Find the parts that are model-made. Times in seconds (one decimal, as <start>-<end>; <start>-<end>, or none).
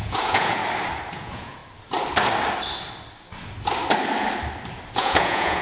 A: 0.0-0.6; 1.1-1.6; 5.0-5.6